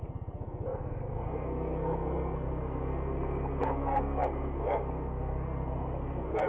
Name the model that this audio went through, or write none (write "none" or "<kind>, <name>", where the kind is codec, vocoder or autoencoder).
codec, SNAC